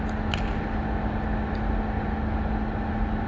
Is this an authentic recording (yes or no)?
yes